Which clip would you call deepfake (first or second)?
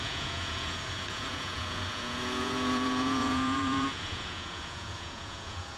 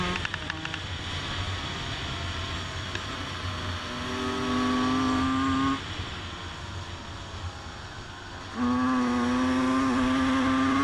first